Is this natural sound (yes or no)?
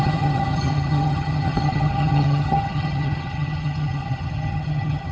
no